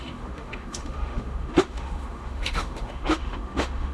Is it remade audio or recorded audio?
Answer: remade